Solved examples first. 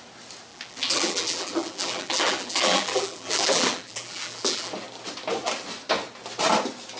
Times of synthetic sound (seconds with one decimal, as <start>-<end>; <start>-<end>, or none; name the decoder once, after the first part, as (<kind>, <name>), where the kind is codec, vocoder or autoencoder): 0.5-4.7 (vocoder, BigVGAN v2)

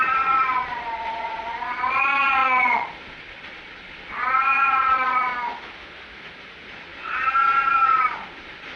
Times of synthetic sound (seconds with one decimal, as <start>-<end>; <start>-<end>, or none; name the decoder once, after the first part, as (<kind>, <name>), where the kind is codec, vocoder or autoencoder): 0.0-5.3 (vocoder, Vocos); 6.7-8.8

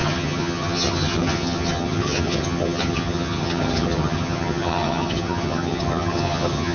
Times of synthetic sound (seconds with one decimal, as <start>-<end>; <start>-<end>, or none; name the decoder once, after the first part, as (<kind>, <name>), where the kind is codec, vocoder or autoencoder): 0.0-6.7 (vocoder, HiFi-GAN)

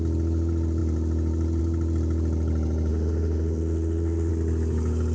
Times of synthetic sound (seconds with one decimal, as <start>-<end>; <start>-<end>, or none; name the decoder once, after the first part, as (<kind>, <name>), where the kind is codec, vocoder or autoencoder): 2.9-4.3 (autoencoder, DAC-VAE)